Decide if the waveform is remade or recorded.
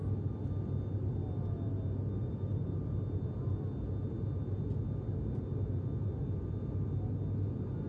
recorded